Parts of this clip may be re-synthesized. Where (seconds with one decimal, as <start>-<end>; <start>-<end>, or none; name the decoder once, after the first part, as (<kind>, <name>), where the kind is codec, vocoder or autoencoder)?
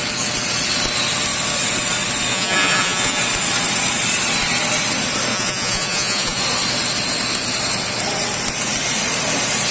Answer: 2.3-3.2 (vocoder, Vocos); 5.3-6.4